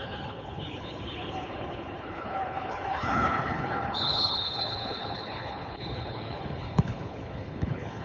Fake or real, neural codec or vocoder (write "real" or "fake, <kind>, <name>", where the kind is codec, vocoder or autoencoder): fake, codec, HILCodec